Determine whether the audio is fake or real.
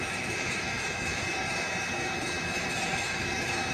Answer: fake